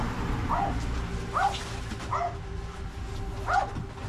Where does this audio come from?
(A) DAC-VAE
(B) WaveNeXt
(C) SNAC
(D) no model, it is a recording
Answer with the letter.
D